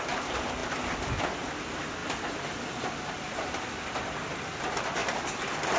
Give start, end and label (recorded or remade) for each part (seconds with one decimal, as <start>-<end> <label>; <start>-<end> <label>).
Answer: 0.0-5.8 recorded